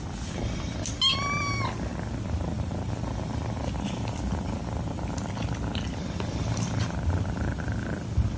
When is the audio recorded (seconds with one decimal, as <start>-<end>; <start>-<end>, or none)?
0.0-8.4